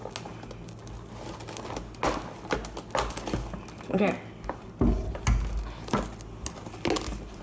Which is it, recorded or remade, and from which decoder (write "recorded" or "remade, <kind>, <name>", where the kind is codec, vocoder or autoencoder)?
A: recorded